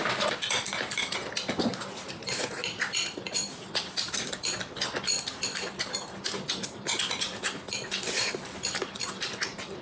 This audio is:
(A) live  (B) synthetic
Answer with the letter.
B